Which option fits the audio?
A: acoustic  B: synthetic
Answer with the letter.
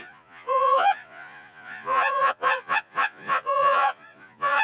B